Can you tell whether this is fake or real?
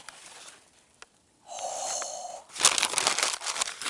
real